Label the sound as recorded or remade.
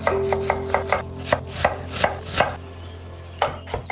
recorded